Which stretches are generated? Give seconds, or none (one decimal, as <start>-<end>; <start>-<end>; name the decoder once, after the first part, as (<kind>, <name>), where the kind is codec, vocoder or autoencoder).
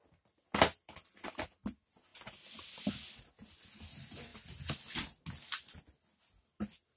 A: none